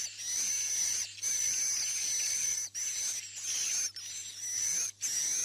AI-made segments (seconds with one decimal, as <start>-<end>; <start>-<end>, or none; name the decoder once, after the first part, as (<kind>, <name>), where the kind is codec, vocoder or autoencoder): none